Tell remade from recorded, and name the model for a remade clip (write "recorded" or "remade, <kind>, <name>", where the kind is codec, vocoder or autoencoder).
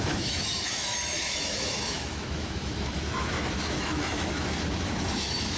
remade, autoencoder, DAC-VAE